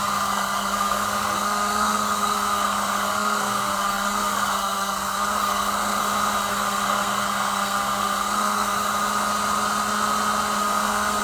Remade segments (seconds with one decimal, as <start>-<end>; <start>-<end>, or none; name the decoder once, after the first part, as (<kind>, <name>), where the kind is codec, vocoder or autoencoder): 0.0-6.0 (codec, SNAC); 6.5-8.9; 10.6-11.2